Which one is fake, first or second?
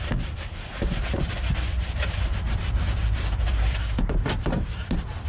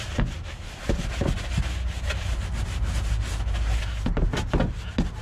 first